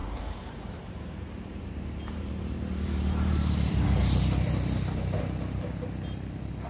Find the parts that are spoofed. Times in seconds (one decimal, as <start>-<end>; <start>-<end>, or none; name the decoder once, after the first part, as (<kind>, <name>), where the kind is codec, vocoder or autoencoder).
0.0-4.0 (vocoder, BigVGAN v2)